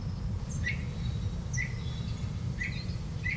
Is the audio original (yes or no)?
yes